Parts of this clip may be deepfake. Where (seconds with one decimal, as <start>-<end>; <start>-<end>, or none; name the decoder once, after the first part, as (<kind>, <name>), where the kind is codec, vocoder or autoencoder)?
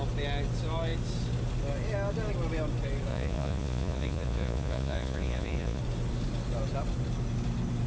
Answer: 3.1-5.8 (vocoder, Vocos)